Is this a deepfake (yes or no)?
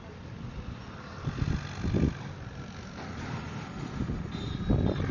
no